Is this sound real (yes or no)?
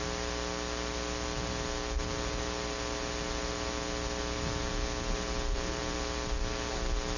yes